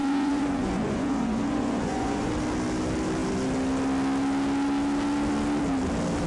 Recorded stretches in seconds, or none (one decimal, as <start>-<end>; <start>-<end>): 2.3-6.3

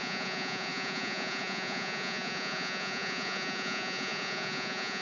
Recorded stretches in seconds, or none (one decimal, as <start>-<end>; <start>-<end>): none

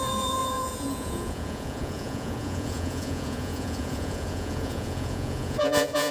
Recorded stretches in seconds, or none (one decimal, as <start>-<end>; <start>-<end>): none

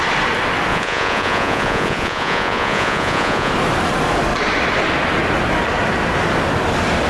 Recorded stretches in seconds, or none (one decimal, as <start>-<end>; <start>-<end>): 0.0-0.7; 3.5-7.1